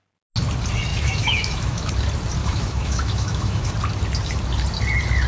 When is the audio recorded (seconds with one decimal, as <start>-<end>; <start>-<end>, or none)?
0.0-0.9; 1.9-2.4; 3.7-5.3